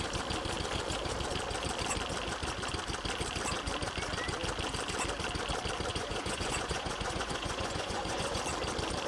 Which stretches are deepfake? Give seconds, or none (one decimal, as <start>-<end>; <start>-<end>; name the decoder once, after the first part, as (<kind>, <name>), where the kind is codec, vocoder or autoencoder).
5.9-8.4 (vocoder, Vocos)